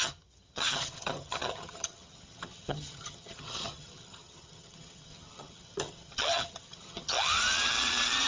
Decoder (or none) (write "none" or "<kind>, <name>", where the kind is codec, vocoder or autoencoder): vocoder, HiFi-GAN